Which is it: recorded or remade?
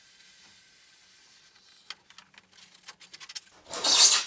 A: recorded